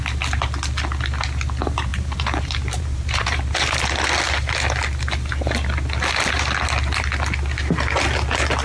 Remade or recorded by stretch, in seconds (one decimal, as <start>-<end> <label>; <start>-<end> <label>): 0.0-1.9 recorded; 1.9-3.8 remade; 3.8-8.6 recorded